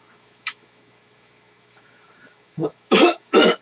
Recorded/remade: remade